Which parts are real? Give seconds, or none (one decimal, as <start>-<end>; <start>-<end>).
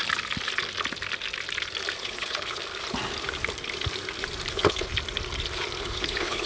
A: 0.0-2.0; 2.6-4.5; 4.9-5.8